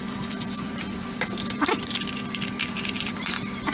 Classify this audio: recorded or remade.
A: remade